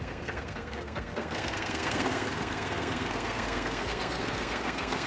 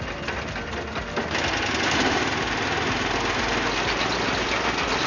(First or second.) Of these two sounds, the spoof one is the first